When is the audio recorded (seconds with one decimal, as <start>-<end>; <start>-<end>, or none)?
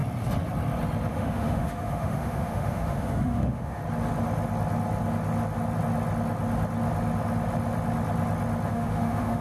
0.0-1.1; 3.8-8.7